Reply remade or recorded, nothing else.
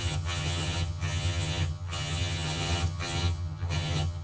remade